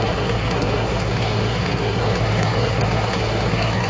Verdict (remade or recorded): remade